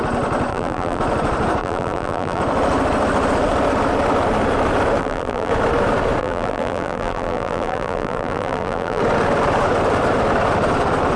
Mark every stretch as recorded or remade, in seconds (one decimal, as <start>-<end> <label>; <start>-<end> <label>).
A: 0.0-0.5 recorded; 0.5-1.0 remade; 1.0-1.6 recorded; 1.6-2.4 remade; 2.4-5.0 recorded; 5.0-5.5 remade; 5.5-6.2 recorded; 6.2-9.0 remade; 9.0-11.2 recorded